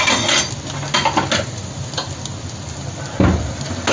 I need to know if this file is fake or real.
real